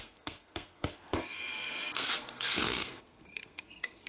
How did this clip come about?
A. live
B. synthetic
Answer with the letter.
B